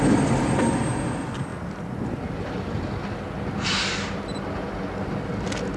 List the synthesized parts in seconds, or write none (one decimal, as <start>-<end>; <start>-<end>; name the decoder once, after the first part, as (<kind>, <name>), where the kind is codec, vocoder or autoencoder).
none